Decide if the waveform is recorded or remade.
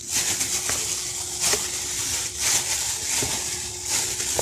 recorded